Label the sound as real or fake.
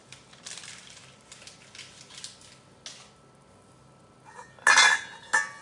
real